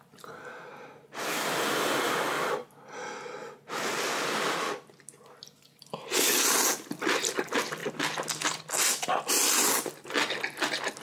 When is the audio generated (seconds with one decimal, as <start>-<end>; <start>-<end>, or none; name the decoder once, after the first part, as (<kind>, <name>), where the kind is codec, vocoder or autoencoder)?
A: none